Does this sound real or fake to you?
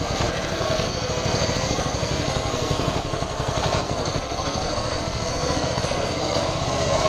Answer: fake